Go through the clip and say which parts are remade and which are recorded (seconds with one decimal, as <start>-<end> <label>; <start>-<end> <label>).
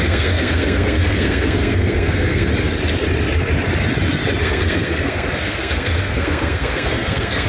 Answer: 0.0-2.5 remade; 2.5-4.4 recorded; 4.4-7.5 remade